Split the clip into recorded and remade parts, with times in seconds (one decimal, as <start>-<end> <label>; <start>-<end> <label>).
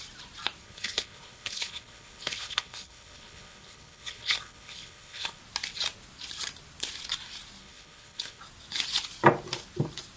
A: 0.0-0.6 recorded; 0.6-5.4 remade; 5.4-7.6 recorded; 7.6-8.4 remade; 8.4-10.2 recorded